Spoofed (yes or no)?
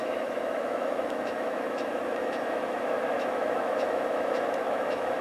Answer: yes